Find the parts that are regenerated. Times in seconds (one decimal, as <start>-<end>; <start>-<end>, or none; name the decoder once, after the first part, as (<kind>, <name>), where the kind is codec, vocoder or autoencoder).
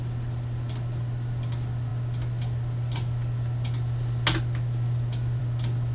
none